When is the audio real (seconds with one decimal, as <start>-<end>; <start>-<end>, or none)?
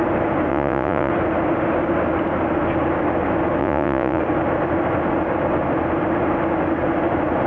0.0-0.5; 1.1-3.6; 4.2-7.5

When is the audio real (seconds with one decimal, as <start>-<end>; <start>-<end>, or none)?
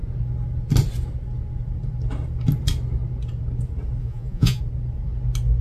0.0-4.0; 4.6-5.6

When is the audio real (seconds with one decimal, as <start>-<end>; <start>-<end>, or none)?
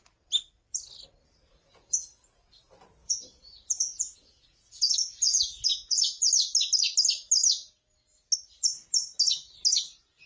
0.0-1.5; 2.5-3.0; 6.3-10.3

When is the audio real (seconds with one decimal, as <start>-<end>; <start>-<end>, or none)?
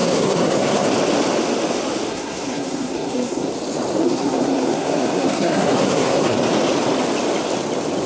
0.9-2.1; 3.5-4.0; 6.4-8.1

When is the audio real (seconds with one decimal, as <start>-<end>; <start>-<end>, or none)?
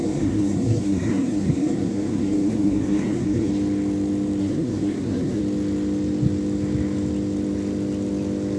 3.5-4.4; 5.4-8.6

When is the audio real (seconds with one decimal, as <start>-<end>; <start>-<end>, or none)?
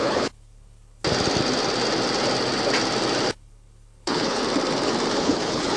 1.0-3.3; 4.4-5.2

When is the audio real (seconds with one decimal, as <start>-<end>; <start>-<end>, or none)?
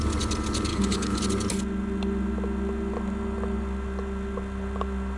0.0-0.7; 1.2-5.2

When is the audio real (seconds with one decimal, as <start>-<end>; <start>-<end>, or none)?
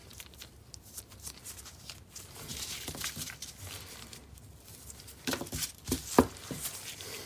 0.0-7.3